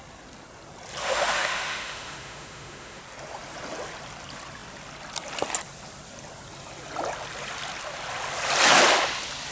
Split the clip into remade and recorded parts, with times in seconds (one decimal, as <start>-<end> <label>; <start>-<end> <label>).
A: 0.0-1.0 recorded; 1.0-3.0 remade; 3.0-9.5 recorded